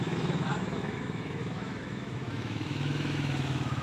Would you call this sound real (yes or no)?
no